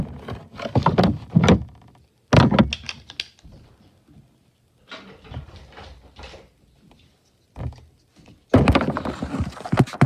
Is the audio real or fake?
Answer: real